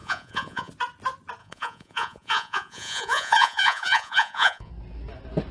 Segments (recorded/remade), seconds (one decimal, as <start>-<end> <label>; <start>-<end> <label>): 0.0-0.7 remade; 0.7-1.4 recorded; 1.4-4.7 remade; 4.7-5.5 recorded